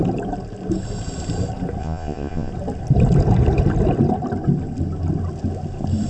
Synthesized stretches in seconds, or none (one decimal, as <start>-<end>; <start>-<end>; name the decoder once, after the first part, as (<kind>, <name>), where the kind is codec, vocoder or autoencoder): 1.8-2.5 (vocoder, Vocos)